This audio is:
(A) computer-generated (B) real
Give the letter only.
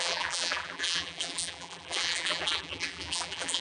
A